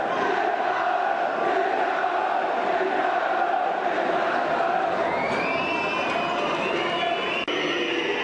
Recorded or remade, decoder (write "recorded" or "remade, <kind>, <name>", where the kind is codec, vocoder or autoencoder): recorded